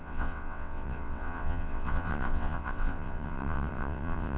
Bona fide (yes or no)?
no